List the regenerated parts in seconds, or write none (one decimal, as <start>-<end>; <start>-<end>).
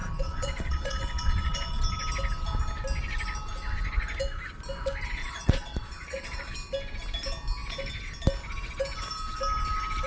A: 0.0-1.8; 5.2-6.5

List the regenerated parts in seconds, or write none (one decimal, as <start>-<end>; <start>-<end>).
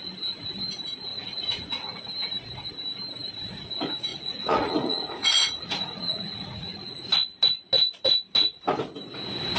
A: 1.1-2.0; 4.1-7.1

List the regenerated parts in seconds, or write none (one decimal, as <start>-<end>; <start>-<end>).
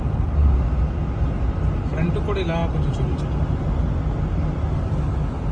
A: none